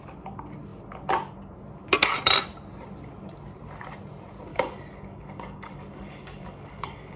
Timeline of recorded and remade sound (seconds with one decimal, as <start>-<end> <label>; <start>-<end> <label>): 0.0-4.5 recorded; 4.5-7.2 remade